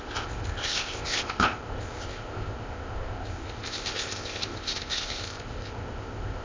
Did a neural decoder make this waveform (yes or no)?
yes